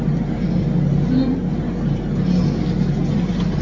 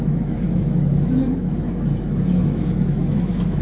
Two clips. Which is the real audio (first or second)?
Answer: first